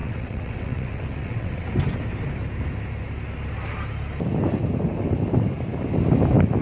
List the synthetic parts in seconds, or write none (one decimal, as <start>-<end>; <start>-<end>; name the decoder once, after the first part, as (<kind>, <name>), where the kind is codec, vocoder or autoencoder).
0.0-1.7 (vocoder, WaveNeXt)